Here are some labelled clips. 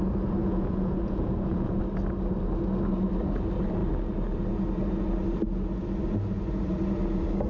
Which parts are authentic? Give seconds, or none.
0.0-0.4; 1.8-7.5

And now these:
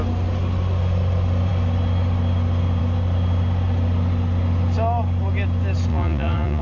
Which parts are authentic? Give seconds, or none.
0.0-5.9

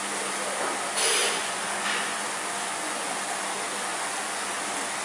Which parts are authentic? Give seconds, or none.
0.0-1.2; 3.2-3.9; 4.5-5.0

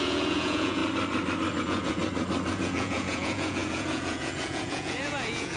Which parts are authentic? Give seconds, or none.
0.8-1.6; 2.0-2.5

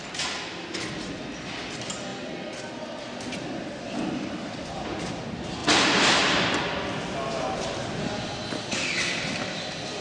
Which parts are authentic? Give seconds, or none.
0.0-10.0

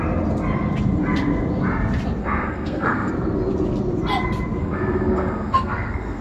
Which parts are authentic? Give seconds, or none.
0.0-2.2; 3.1-4.6

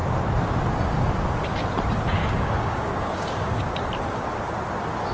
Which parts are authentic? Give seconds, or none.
0.0-2.2; 3.7-5.1